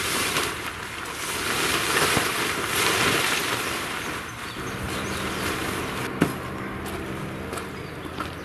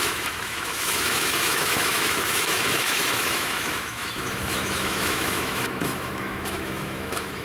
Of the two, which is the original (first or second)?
first